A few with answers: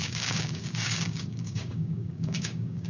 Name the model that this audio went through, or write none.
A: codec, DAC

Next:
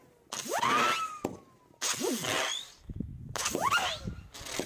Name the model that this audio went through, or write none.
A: none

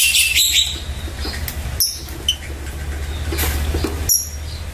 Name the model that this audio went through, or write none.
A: none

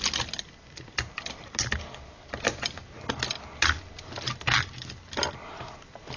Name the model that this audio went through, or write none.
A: none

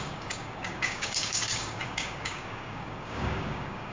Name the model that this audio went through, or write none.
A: codec, DAC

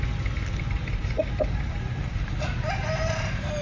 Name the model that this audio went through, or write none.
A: none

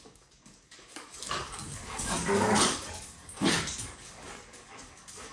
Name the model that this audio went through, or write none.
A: codec, DAC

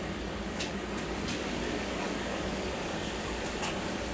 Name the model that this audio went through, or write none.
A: codec, DAC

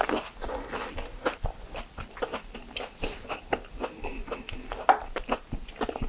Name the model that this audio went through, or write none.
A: none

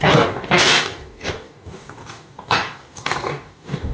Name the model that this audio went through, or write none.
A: codec, DAC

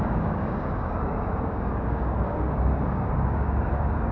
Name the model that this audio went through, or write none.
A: codec, DAC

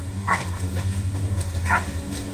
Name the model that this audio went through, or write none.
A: codec, DAC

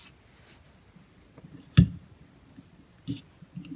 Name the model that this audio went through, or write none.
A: none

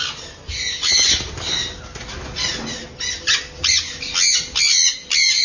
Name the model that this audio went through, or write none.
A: none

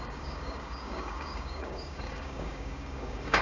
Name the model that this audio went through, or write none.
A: codec, DAC